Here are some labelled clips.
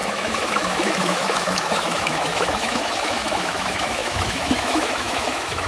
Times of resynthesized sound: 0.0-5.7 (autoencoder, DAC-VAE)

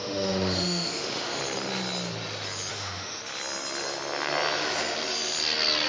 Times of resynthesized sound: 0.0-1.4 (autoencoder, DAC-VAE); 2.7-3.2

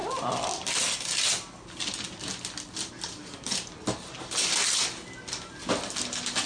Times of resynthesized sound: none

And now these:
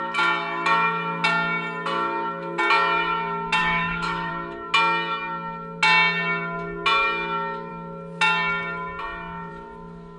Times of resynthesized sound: 3.6-4.3 (autoencoder, DAC-VAE)

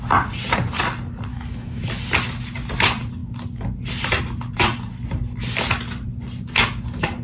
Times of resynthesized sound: 1.3-1.9 (autoencoder, DAC-VAE)

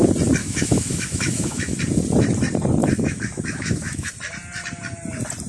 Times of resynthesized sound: 0.4-1.8 (autoencoder, DAC-VAE); 2.8-4.1

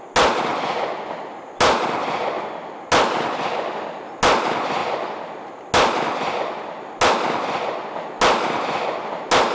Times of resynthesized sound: none

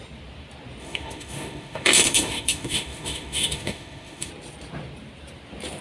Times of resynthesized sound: 0.8-4.3 (autoencoder, DAC-VAE)